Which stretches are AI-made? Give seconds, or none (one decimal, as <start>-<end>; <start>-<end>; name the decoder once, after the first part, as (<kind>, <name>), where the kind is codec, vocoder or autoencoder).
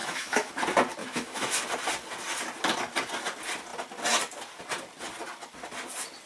0.0-0.5 (autoencoder, DAC-VAE); 1.0-1.6